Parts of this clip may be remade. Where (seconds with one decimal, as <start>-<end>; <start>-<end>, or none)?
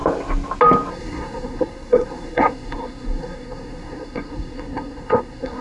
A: 0.9-5.6